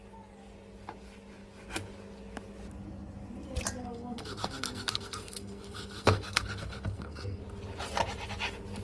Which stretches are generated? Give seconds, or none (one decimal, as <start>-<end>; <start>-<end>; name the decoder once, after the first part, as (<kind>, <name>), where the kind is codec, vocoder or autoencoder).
3.8-7.4 (codec, SNAC)